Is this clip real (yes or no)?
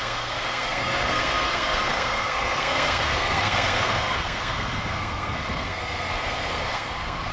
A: no